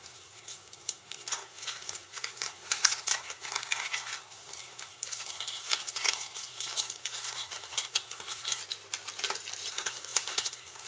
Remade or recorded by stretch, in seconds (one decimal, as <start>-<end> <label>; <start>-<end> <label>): 0.0-8.6 remade; 8.6-9.7 recorded; 9.7-10.9 remade